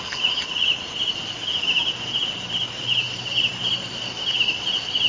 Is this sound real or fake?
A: real